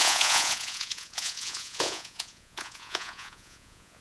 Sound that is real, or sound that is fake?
fake